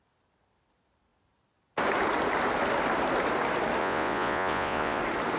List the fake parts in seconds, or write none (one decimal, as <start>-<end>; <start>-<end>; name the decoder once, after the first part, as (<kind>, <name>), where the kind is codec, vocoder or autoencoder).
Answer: 3.8-5.0 (vocoder, Vocos)